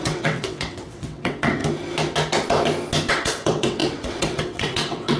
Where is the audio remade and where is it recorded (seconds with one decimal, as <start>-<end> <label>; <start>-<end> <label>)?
0.0-1.6 remade; 1.6-3.1 recorded; 3.1-5.2 remade